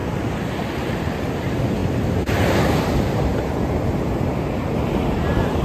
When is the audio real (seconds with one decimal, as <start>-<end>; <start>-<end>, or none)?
0.0-0.9